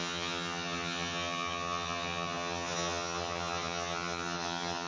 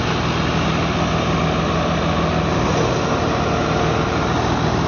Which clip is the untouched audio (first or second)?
second